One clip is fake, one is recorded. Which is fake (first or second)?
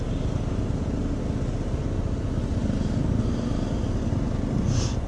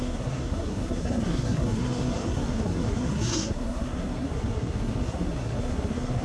second